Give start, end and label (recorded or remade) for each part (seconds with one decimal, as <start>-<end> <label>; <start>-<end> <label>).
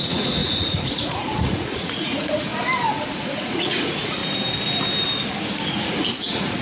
0.0-2.5 remade; 2.5-3.1 recorded; 3.1-4.2 remade; 4.2-5.7 recorded; 5.7-6.6 remade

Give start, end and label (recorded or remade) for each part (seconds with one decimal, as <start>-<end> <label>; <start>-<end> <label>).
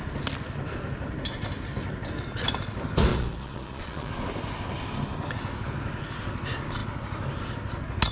0.0-3.1 recorded; 3.1-4.1 remade; 4.1-8.1 recorded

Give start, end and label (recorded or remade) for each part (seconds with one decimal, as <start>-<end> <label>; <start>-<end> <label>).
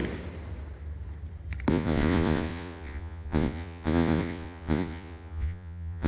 0.0-1.7 recorded; 1.7-6.1 remade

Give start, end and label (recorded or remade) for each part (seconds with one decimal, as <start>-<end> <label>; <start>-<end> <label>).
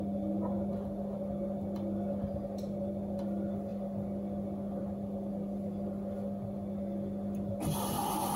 0.0-8.4 recorded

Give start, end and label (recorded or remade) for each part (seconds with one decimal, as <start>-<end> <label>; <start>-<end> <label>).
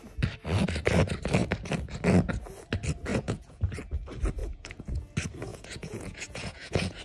0.0-3.1 recorded; 3.1-3.6 remade; 3.6-4.4 recorded; 4.4-5.0 remade; 5.0-5.5 recorded; 5.5-7.0 remade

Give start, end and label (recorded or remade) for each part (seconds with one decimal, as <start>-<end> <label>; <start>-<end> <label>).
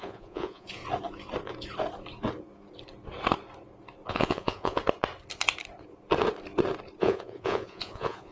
0.0-0.8 remade; 0.8-4.1 recorded; 4.1-4.8 remade; 4.8-7.0 recorded; 7.0-8.3 remade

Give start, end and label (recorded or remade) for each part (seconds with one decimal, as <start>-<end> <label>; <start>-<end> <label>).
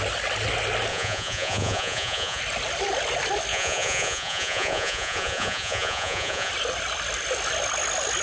0.0-0.9 recorded; 0.9-2.4 remade; 2.4-3.5 recorded; 3.5-6.5 remade; 6.5-8.2 recorded